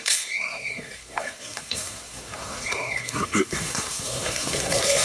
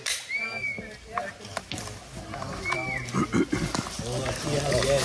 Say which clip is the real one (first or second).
second